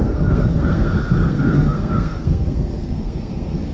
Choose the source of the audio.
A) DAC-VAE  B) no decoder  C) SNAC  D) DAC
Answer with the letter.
C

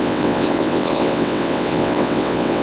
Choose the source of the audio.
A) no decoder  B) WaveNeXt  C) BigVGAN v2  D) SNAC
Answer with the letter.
B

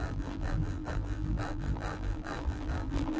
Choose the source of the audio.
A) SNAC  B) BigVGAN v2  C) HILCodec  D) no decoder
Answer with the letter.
B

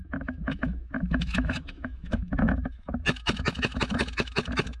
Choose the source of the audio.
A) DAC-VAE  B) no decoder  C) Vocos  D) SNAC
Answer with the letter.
A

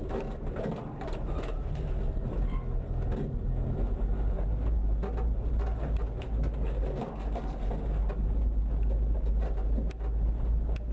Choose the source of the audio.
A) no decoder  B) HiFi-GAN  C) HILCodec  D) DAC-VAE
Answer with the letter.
A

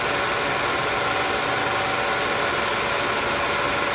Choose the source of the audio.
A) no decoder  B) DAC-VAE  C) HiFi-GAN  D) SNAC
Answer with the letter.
A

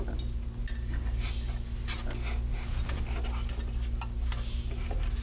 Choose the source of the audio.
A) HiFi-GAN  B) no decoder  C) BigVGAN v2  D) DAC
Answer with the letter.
B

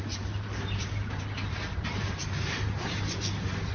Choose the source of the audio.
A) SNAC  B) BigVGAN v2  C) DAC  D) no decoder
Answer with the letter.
B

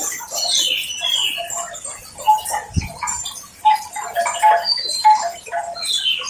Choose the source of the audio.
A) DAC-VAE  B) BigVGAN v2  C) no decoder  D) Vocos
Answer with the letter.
C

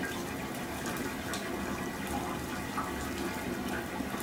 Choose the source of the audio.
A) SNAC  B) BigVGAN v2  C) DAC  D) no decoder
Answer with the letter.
D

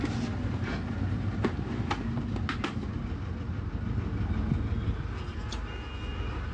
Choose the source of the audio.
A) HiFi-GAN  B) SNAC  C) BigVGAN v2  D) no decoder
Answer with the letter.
D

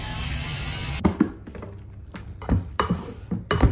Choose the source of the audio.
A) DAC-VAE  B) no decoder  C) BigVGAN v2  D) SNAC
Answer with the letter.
B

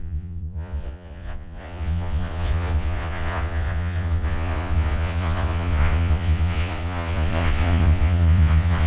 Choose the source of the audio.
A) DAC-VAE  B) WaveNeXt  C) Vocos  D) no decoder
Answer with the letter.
C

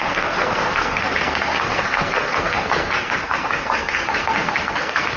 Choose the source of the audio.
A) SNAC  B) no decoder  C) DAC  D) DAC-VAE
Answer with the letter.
A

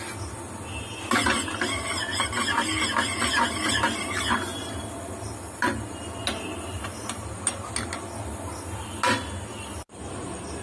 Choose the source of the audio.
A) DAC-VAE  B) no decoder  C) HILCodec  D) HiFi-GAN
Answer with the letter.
B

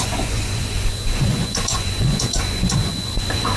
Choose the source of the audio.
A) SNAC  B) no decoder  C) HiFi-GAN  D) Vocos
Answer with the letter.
D